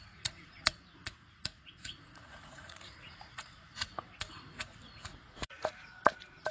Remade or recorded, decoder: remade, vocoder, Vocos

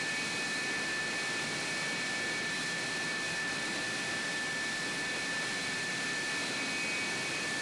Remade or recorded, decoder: recorded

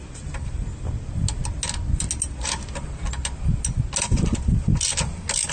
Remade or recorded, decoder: recorded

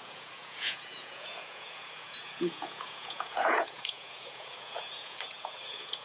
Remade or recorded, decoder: remade, vocoder, Vocos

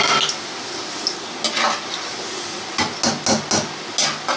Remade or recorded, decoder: recorded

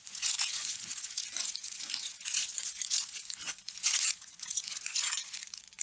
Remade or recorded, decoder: remade, vocoder, Vocos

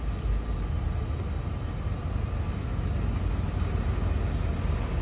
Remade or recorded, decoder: recorded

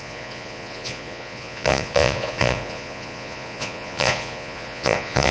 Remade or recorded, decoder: remade, vocoder, Vocos